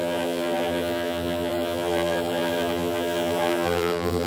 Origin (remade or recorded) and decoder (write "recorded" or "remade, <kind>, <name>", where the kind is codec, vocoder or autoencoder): remade, vocoder, BigVGAN v2